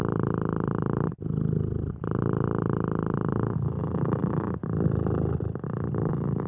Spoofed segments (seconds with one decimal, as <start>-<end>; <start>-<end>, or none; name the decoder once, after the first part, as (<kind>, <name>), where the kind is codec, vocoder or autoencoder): 3.8-6.1 (vocoder, BigVGAN v2)